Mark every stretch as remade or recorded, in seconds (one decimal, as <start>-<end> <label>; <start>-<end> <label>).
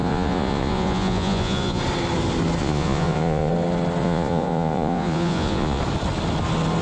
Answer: 0.0-1.8 remade; 1.8-2.6 recorded; 2.6-3.5 remade; 3.5-4.0 recorded; 4.0-5.8 remade; 5.8-6.8 recorded